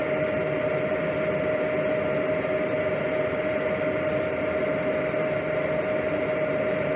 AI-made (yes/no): no